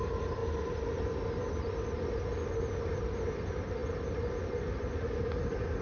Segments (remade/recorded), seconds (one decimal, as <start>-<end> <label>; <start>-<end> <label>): 0.0-5.8 recorded